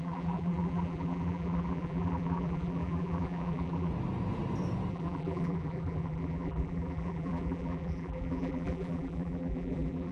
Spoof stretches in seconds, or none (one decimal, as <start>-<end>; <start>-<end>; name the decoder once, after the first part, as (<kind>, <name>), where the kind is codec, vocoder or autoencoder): 0.0-3.9 (vocoder, BigVGAN v2); 4.9-10.1